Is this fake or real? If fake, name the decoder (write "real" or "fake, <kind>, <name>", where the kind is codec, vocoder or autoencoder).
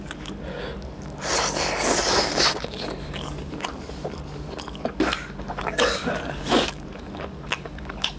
fake, codec, DAC